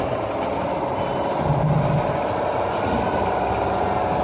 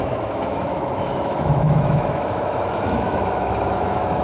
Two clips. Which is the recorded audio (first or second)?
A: first